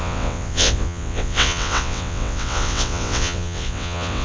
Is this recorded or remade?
remade